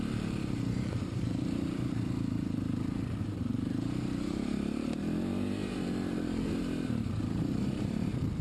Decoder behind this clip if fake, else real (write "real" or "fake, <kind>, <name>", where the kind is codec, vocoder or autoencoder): fake, vocoder, BigVGAN v2